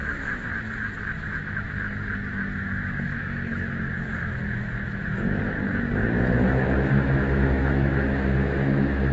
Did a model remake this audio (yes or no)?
yes